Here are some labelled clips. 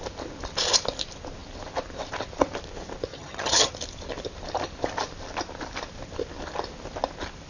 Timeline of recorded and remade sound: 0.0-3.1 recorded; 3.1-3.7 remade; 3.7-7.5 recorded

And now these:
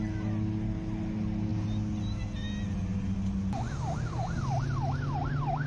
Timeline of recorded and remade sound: 0.0-5.7 recorded